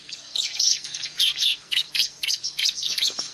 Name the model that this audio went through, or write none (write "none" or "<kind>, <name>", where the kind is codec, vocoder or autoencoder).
codec, SNAC